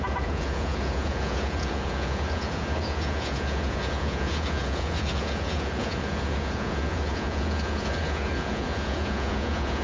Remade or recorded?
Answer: remade